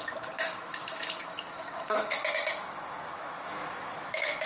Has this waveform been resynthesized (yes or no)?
yes